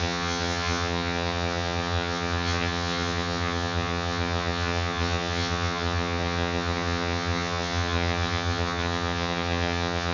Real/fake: fake